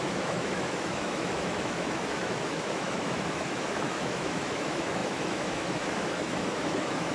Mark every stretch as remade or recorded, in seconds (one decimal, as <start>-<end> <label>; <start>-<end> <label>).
0.0-7.1 remade